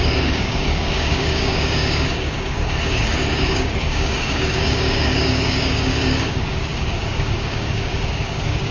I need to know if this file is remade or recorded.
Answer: remade